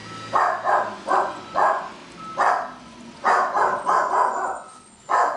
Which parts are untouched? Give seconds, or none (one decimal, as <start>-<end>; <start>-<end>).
0.0-0.9; 2.0-2.8